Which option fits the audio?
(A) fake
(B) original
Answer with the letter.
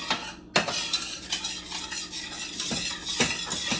B